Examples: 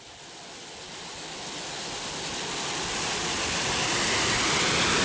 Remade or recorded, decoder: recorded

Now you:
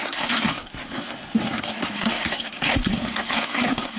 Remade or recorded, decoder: remade, codec, SNAC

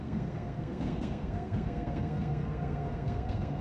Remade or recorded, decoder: remade, codec, SNAC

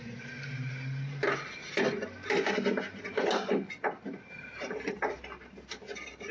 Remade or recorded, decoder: recorded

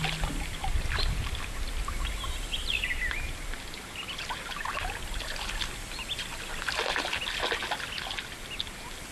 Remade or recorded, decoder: recorded